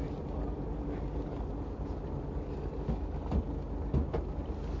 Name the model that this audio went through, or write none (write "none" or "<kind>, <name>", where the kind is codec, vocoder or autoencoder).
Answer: none